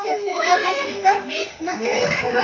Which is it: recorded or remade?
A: remade